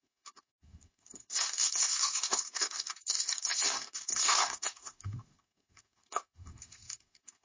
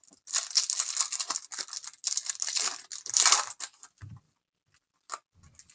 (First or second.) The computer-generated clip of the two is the first